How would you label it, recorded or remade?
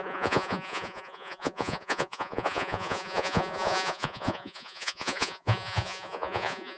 remade